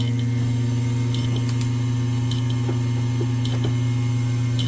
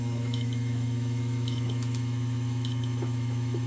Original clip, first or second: first